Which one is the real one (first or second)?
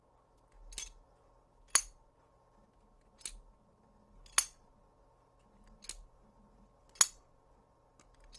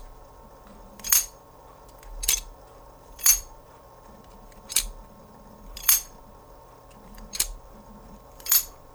first